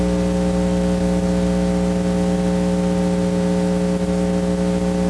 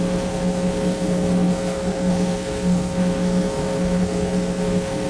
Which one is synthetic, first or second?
second